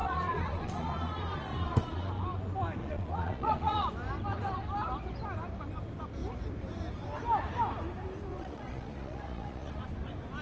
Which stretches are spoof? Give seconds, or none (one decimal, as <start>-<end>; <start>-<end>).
0.0-2.1; 2.8-3.9; 8.3-9.8